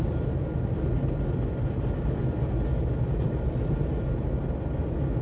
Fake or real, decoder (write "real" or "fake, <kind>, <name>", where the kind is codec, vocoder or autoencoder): real